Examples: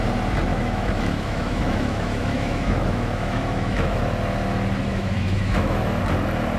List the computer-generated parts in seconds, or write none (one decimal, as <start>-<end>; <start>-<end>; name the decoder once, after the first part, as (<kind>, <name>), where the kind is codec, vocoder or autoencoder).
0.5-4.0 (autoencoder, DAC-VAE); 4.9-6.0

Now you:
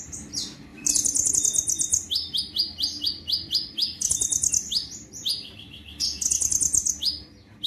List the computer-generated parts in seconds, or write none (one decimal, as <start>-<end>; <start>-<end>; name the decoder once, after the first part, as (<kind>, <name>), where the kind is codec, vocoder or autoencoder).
0.7-1.3 (vocoder, BigVGAN v2)

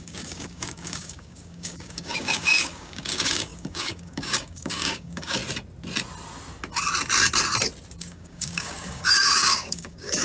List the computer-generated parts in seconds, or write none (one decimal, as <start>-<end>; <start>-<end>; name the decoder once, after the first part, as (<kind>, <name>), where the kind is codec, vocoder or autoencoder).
0.0-5.4 (codec, DAC); 8.0-10.2